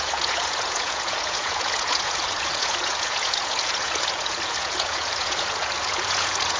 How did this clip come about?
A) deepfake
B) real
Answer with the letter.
A